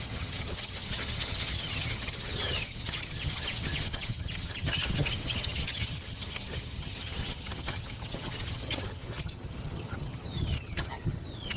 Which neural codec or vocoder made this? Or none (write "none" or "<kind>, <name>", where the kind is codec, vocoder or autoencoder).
vocoder, HiFi-GAN